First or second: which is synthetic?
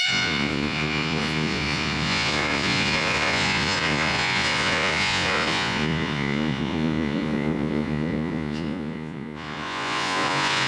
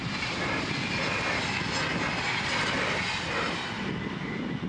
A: first